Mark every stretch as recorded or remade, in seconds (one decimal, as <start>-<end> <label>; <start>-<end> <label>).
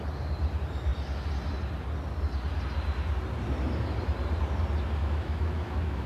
0.0-5.0 recorded; 5.0-6.1 remade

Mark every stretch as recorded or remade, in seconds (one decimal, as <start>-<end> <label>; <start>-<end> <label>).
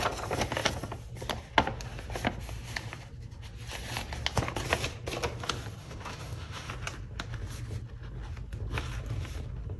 0.0-5.8 recorded; 5.8-6.7 remade; 6.7-9.8 recorded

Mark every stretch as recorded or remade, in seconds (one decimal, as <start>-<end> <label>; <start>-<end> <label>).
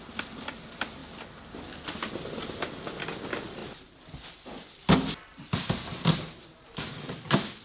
0.0-7.6 recorded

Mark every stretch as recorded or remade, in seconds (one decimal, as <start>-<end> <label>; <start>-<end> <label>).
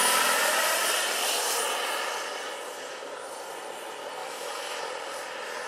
0.0-4.2 recorded; 4.2-4.8 remade; 4.8-5.7 recorded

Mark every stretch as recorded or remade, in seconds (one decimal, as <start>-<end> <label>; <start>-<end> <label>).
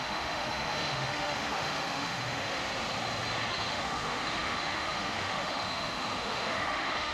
0.0-2.6 remade; 2.6-3.5 recorded; 3.5-7.1 remade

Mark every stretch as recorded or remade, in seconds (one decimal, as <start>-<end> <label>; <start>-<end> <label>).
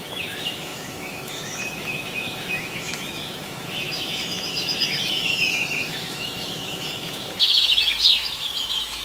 0.0-9.0 remade